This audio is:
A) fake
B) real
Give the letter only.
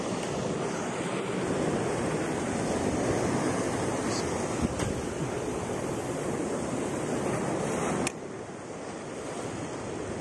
B